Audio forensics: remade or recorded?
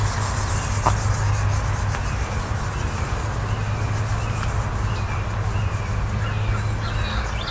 recorded